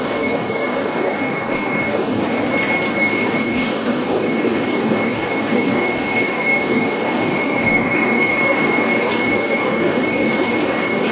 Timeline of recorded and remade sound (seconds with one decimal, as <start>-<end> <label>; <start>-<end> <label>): 0.0-2.2 remade; 2.2-3.0 recorded; 3.0-11.1 remade